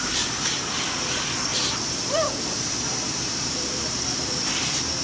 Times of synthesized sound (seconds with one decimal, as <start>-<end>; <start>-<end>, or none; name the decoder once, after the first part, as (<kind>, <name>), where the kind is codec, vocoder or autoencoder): 1.5-4.5 (vocoder, BigVGAN v2)